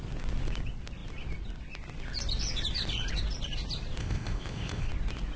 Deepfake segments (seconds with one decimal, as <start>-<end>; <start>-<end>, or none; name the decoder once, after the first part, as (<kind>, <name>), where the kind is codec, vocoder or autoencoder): 4.0-4.9 (codec, ZipCodec)